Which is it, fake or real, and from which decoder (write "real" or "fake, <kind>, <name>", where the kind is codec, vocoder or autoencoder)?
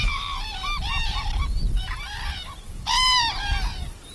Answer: fake, vocoder, BigVGAN v2